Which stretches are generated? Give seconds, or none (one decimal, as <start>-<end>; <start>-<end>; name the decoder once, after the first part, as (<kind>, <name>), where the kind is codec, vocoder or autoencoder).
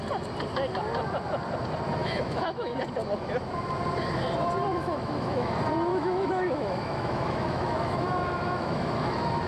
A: 2.0-2.8 (autoencoder, DAC-VAE); 4.7-5.5; 5.9-9.1